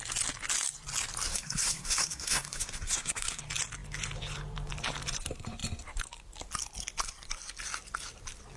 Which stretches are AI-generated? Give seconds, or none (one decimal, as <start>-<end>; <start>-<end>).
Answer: 1.3-3.4